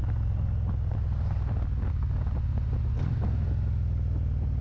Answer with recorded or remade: recorded